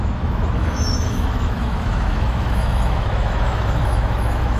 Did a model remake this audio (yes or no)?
yes